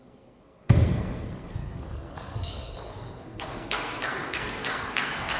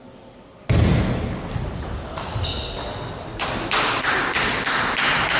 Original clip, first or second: second